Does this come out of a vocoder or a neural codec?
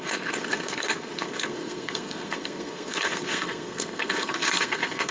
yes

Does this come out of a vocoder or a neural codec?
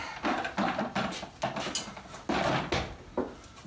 no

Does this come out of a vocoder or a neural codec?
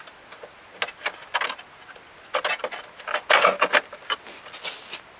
no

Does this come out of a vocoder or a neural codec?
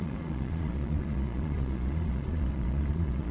yes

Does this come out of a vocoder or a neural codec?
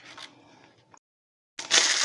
no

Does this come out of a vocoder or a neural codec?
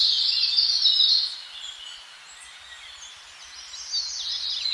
no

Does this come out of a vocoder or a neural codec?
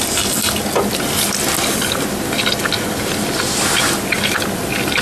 no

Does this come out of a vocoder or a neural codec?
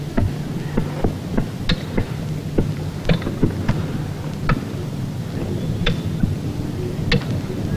no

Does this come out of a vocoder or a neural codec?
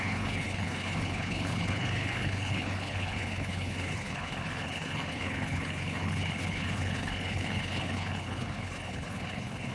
yes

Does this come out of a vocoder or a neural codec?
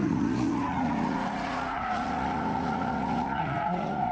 yes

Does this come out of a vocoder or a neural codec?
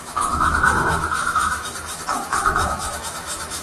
yes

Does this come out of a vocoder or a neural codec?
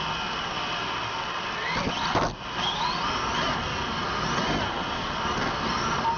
no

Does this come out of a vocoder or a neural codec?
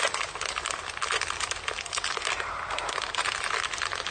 no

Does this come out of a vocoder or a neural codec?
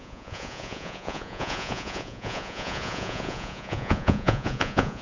yes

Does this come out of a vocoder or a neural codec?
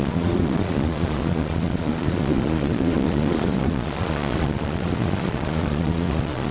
yes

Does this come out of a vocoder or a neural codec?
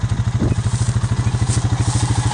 no